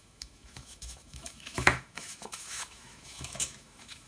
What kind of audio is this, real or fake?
fake